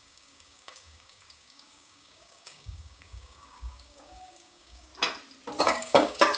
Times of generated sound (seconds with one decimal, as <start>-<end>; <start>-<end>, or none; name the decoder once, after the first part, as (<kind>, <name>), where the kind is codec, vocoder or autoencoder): 0.0-4.9 (codec, DAC); 5.6-6.4